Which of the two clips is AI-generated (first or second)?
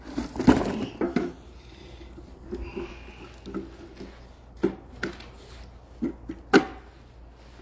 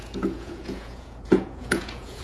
second